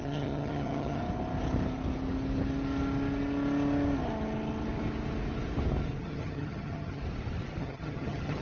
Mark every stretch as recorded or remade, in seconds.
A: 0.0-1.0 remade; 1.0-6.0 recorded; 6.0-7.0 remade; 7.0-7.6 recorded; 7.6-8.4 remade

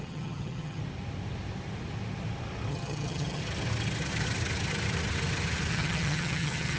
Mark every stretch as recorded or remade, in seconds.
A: 0.0-0.8 remade; 0.8-2.7 recorded; 2.7-3.4 remade; 3.4-5.7 recorded; 5.7-6.8 remade

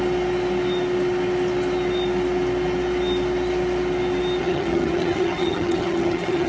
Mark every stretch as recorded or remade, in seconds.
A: 0.0-4.4 recorded; 4.4-6.5 remade

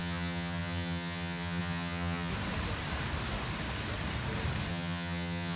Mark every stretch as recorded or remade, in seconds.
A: 0.0-2.3 remade; 2.3-4.7 recorded; 4.7-5.6 remade

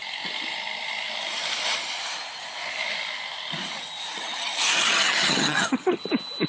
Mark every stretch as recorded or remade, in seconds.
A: 0.0-4.1 recorded; 4.1-6.0 remade; 6.0-6.5 recorded